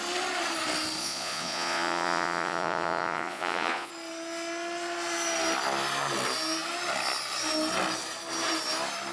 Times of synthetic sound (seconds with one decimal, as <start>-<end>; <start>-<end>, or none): 1.0-3.9